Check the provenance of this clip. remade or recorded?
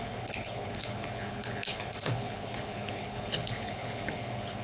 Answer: remade